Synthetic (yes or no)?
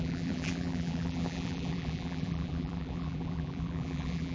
yes